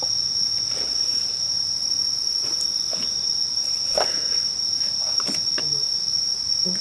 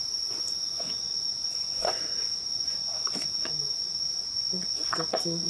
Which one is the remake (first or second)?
second